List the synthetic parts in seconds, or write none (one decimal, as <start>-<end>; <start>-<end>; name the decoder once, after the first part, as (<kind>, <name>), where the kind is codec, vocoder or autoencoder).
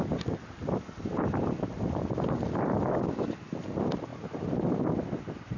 none